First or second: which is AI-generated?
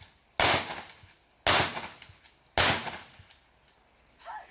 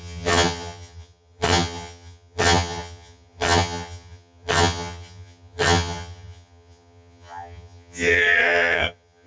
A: second